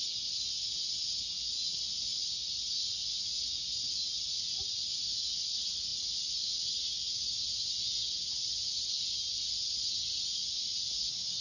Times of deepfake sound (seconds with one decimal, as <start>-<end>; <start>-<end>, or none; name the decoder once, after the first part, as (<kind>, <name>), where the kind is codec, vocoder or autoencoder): none